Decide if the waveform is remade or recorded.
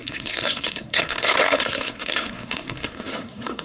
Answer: remade